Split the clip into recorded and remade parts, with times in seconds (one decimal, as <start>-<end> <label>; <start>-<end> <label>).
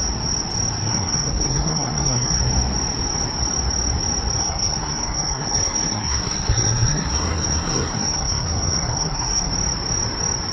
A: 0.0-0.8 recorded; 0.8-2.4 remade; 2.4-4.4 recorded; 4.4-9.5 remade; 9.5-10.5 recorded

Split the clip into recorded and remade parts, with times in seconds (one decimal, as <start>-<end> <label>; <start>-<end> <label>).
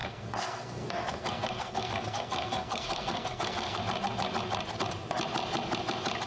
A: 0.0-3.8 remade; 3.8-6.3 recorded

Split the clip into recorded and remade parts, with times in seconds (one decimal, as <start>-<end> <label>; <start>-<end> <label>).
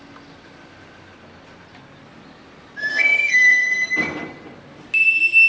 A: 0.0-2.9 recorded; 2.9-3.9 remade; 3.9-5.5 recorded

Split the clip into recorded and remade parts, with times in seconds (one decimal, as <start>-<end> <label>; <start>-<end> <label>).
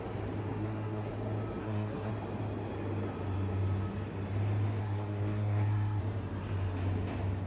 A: 0.0-0.4 recorded; 0.4-1.1 remade; 1.1-1.6 recorded; 1.6-2.1 remade; 2.1-4.8 recorded; 4.8-6.0 remade; 6.0-7.5 recorded